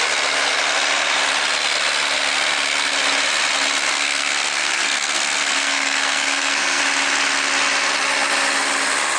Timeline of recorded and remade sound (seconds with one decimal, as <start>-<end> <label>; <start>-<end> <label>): 0.0-3.9 recorded; 3.9-6.8 remade; 6.8-9.2 recorded